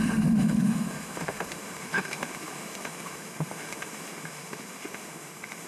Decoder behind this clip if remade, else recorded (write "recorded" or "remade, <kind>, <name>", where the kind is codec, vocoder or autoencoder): remade, autoencoder, DAC-VAE